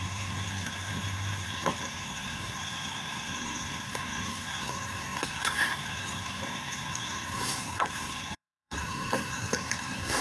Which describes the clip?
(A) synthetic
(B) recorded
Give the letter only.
A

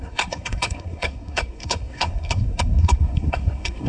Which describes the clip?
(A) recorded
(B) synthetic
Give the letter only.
B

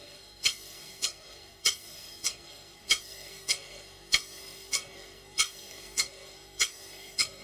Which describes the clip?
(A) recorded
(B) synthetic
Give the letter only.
B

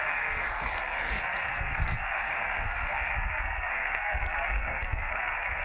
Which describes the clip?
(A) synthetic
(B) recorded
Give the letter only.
A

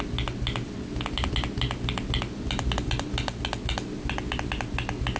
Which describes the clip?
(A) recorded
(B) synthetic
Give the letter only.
A